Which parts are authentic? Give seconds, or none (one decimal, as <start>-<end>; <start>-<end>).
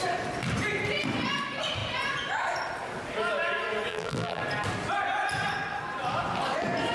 0.0-3.9; 4.4-6.9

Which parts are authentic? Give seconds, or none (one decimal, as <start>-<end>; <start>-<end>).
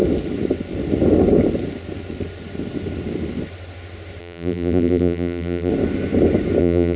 0.0-4.2; 5.7-6.6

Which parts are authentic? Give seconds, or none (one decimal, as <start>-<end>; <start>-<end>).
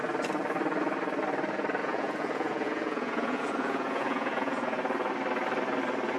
0.0-1.8; 4.8-6.2